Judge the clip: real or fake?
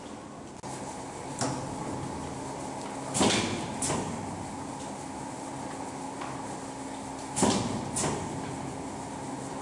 real